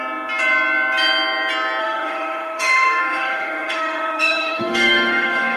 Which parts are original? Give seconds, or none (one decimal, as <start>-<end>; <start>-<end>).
0.0-1.8